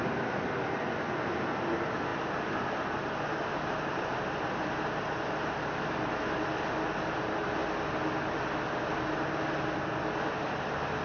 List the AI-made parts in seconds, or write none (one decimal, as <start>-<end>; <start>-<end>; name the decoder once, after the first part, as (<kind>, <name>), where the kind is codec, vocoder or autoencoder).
2.1-3.6 (vocoder, BigVGAN v2)